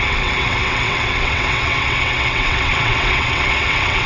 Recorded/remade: remade